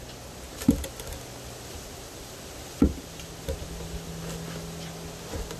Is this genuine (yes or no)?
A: yes